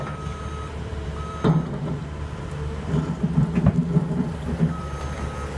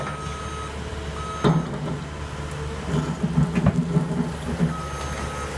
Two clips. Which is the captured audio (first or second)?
second